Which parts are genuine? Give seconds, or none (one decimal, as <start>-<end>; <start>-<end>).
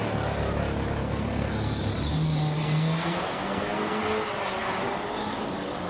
0.0-1.0; 1.8-2.6; 4.0-5.9